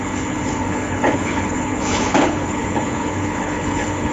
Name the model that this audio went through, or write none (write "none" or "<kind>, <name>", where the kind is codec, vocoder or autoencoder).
codec, HILCodec